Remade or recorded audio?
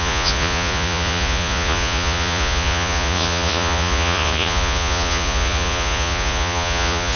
remade